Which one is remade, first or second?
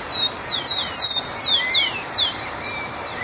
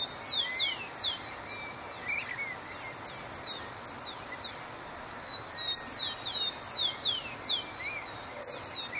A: first